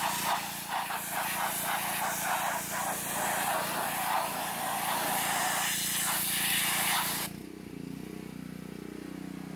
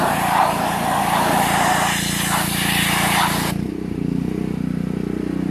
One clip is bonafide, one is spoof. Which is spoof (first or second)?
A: second